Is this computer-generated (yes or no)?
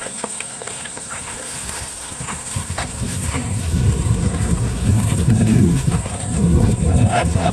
yes